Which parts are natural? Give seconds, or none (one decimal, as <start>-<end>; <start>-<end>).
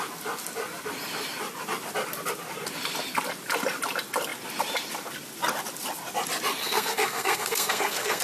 0.0-6.6